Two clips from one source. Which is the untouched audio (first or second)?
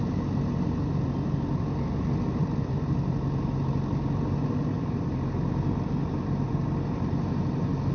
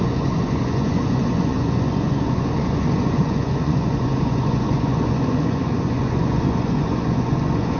first